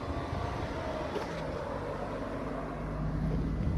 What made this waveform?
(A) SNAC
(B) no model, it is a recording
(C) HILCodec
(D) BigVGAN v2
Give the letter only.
B